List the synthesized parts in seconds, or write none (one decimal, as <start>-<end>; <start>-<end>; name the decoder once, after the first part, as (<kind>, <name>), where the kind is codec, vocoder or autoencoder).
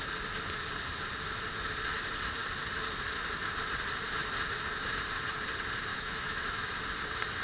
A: 5.9-6.8 (autoencoder, DAC-VAE)